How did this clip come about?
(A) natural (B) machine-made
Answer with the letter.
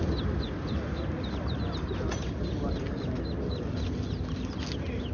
A